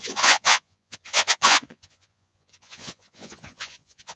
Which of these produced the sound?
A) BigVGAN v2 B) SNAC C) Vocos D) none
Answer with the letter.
C